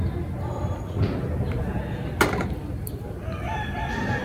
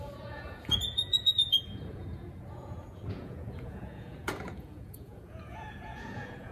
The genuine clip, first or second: first